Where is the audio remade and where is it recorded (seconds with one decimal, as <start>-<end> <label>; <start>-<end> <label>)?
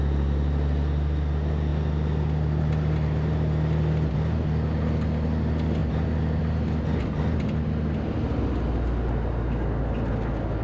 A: 0.0-10.6 recorded